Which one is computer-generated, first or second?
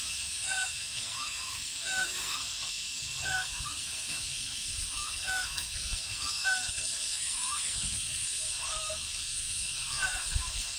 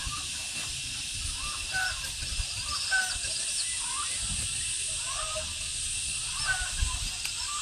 first